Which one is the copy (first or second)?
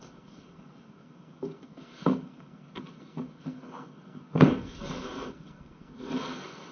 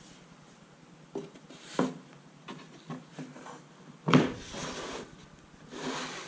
first